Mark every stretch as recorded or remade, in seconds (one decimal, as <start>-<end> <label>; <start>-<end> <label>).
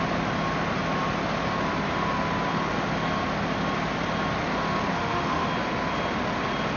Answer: 0.0-4.9 recorded; 4.9-5.5 remade; 5.5-6.8 recorded